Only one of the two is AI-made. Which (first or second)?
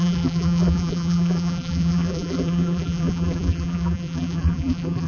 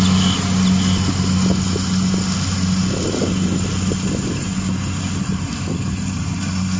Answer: first